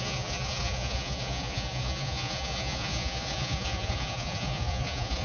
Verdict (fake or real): fake